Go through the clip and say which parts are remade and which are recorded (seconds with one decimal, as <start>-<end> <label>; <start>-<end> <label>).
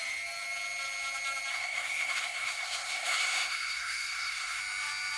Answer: 0.0-1.5 recorded; 1.5-4.6 remade; 4.6-5.2 recorded